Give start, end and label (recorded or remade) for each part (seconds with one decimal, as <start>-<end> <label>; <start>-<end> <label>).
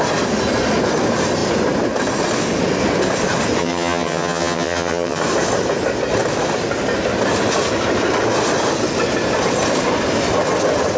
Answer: 0.0-3.6 recorded; 3.6-5.2 remade; 5.2-11.0 recorded